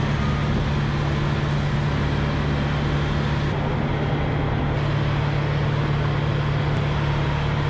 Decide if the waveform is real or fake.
real